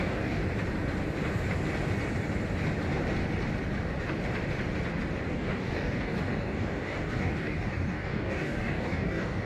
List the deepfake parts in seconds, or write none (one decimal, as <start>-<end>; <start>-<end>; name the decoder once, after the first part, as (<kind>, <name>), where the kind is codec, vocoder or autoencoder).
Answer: 0.0-0.4 (codec, DAC); 5.3-9.5